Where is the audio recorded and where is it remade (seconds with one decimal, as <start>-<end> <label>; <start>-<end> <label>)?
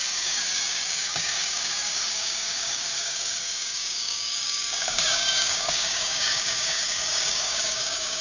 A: 0.0-8.2 remade